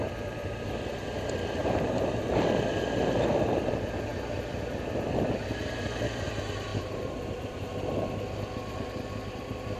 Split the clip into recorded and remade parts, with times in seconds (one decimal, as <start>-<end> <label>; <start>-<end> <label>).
0.0-1.6 recorded; 1.6-2.3 remade; 2.3-6.7 recorded; 6.7-7.7 remade; 7.7-9.8 recorded